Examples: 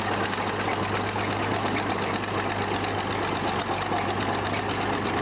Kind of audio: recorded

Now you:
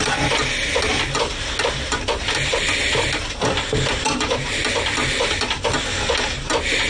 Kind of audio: recorded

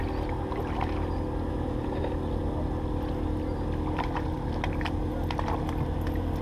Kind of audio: recorded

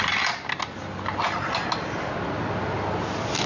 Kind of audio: recorded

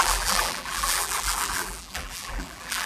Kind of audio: remade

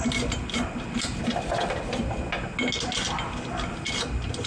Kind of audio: recorded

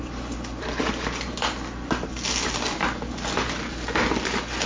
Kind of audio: recorded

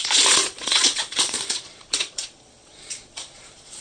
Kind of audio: remade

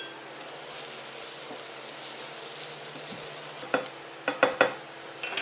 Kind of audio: recorded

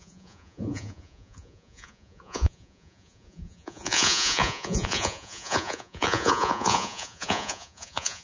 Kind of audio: remade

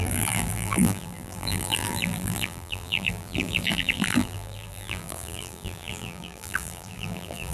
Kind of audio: remade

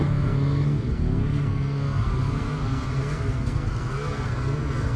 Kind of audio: remade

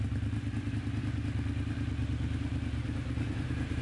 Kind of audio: recorded